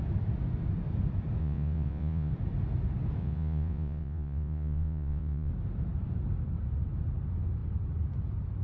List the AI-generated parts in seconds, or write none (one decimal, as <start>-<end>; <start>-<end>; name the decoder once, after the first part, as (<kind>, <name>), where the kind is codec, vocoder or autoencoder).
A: 1.4-2.3 (vocoder, Vocos); 3.2-5.5